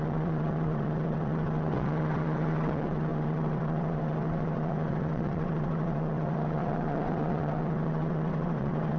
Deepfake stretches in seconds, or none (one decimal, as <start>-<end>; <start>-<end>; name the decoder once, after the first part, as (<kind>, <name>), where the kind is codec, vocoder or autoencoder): 0.0-9.0 (vocoder, WaveNeXt)